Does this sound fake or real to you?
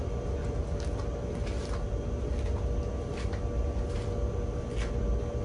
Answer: real